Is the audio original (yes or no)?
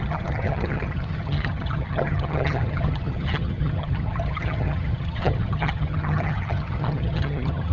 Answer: no